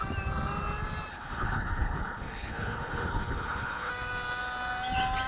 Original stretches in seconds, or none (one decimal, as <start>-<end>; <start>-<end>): 0.0-1.1; 3.9-5.3